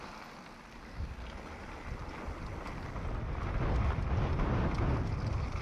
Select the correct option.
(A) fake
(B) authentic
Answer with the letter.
B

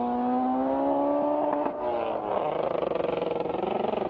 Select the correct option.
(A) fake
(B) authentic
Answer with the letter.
B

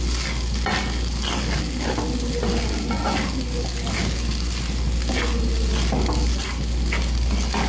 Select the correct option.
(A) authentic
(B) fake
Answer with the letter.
A